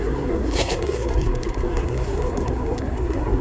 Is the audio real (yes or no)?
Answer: no